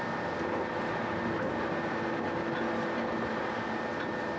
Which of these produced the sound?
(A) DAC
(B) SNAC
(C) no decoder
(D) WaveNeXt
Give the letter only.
C